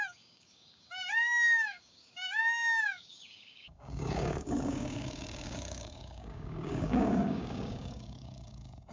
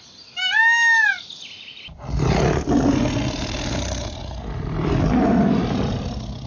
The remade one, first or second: first